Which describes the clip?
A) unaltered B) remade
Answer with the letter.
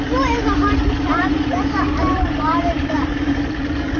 B